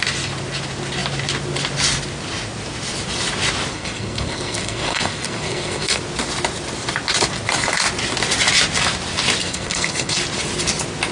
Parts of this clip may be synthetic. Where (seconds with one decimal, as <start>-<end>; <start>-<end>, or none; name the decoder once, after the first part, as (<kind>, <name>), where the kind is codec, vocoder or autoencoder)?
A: 3.7-6.0 (codec, SNAC); 9.4-10.2